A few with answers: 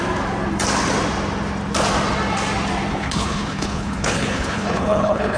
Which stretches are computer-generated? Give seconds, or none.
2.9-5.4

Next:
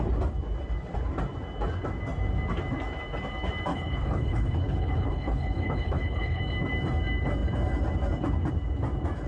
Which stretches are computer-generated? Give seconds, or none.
3.7-6.4

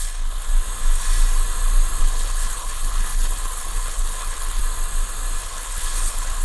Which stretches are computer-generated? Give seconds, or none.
0.0-0.5; 2.0-4.6; 5.4-6.4

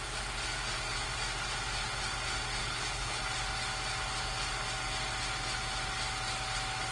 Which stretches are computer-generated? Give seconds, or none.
2.6-3.2

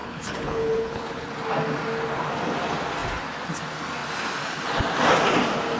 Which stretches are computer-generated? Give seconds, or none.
0.0-1.3

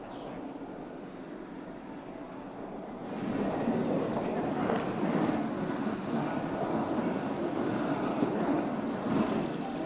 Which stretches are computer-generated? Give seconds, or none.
8.1-8.6

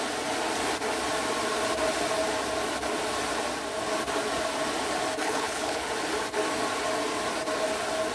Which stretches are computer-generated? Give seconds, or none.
5.2-5.9